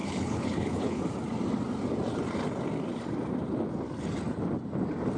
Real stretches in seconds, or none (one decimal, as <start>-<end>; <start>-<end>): 1.0-5.2